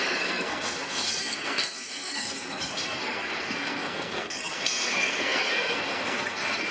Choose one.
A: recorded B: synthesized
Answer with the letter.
B